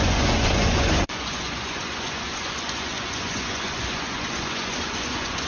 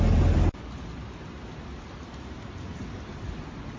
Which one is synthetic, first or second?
first